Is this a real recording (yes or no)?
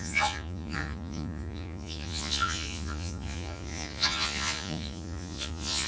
no